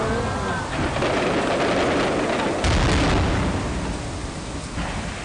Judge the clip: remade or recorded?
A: recorded